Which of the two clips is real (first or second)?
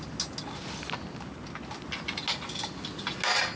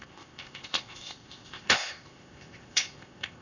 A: first